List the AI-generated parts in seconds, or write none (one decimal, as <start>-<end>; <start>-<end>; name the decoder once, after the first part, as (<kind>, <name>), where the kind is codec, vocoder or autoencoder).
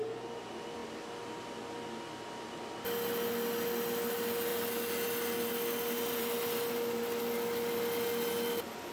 none